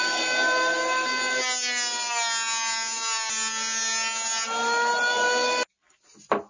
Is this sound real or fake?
real